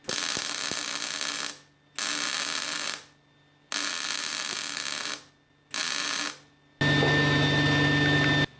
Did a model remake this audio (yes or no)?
no